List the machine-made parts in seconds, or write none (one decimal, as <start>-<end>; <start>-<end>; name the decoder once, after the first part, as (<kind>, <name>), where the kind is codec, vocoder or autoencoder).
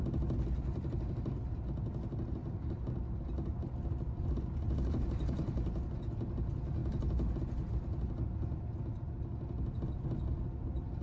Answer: 2.4-5.8 (vocoder, BigVGAN v2)